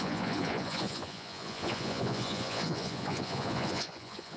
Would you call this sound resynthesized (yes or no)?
yes